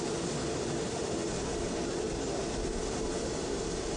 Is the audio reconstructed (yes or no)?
no